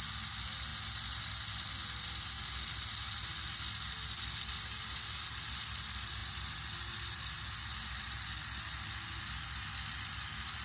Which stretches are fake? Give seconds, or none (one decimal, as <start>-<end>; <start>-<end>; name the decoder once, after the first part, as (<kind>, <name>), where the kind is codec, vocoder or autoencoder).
none